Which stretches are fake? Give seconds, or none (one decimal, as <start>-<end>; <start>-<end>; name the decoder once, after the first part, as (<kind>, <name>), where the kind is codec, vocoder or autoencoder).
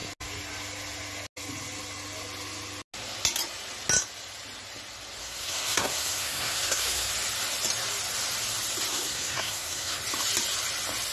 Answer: 5.2-7.1 (codec, SNAC); 8.9-10.0